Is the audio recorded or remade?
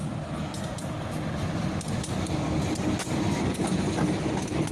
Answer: recorded